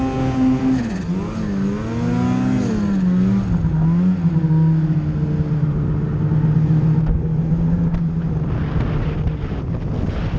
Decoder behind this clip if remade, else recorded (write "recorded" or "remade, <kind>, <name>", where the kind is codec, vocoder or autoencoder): recorded